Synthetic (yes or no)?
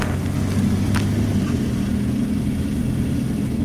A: no